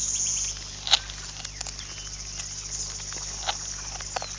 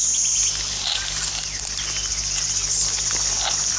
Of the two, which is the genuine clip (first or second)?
first